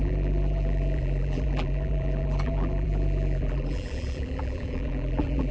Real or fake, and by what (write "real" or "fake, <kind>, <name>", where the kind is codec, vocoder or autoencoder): fake, vocoder, BigVGAN v2